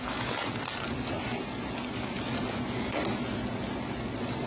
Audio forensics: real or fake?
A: real